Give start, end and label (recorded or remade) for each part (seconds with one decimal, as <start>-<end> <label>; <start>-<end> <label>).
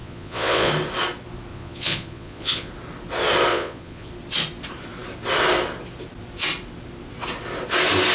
0.0-0.7 remade; 0.7-1.5 recorded; 1.5-2.7 remade; 2.7-3.5 recorded; 3.5-4.1 remade; 4.1-8.1 recorded